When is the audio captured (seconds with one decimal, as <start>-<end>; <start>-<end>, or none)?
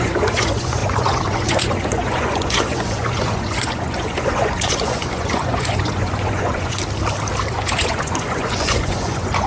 6.8-7.5